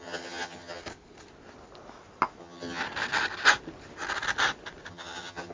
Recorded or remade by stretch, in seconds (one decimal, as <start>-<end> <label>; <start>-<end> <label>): 0.0-0.8 remade; 0.8-2.4 recorded; 2.4-2.8 remade; 2.8-4.9 recorded; 4.9-5.5 remade